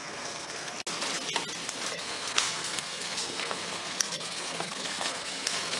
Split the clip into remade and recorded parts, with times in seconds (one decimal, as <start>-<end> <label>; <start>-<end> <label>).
0.0-0.7 remade; 0.7-1.9 recorded; 1.9-5.8 remade